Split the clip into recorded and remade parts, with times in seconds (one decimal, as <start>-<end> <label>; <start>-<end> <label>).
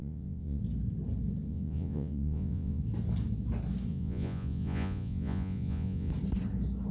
0.0-0.6 remade; 0.6-1.5 recorded; 1.5-2.8 remade; 2.8-3.9 recorded; 3.9-6.1 remade; 6.1-6.9 recorded